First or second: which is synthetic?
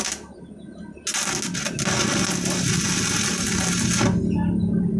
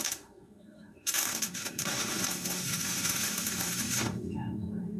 second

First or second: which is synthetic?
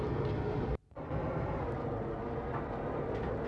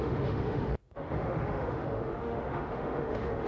second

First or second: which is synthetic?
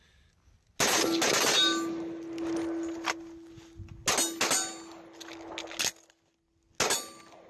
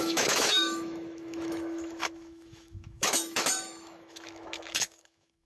second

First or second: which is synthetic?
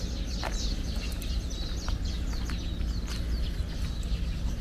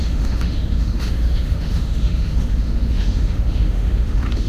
second